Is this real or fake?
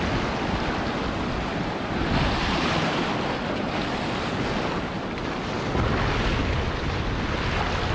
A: real